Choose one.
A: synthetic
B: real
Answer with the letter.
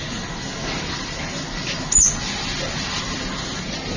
B